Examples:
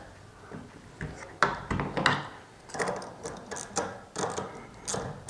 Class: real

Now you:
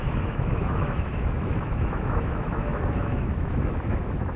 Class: fake